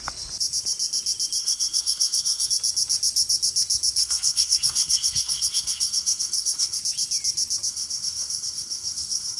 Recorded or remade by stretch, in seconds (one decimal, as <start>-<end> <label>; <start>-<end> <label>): 0.0-1.4 recorded; 1.4-2.5 remade; 2.5-4.0 recorded; 4.0-6.8 remade; 6.8-7.7 recorded; 7.7-9.4 remade

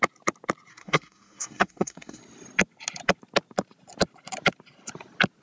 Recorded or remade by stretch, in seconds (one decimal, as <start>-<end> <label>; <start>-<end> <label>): 0.0-0.7 recorded; 0.7-2.2 remade; 2.2-5.4 recorded